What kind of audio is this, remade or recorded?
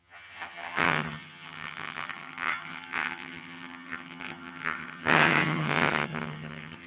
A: remade